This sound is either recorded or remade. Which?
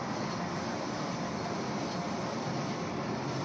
recorded